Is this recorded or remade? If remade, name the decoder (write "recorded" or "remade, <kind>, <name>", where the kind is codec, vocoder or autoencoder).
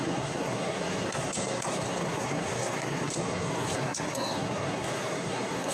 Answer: remade, codec, SNAC